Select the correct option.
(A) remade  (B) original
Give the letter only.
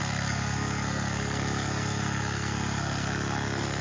A